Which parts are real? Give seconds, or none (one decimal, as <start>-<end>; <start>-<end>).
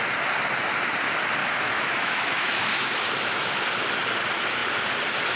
0.0-1.4; 3.6-5.4